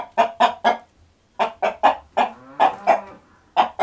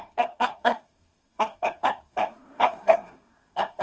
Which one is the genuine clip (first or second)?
first